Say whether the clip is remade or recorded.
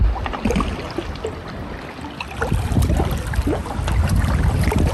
recorded